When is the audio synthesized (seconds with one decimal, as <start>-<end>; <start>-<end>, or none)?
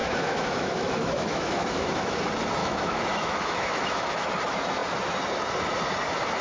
0.0-2.2; 2.6-4.3